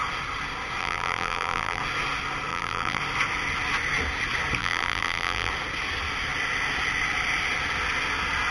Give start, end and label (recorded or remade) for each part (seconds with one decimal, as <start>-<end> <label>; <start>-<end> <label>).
0.0-0.8 recorded; 0.8-1.8 remade; 1.8-2.5 recorded; 2.5-3.0 remade; 3.0-4.6 recorded; 4.6-5.5 remade; 5.5-8.5 recorded